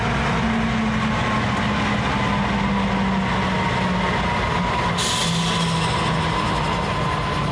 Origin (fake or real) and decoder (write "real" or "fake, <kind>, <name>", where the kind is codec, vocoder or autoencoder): real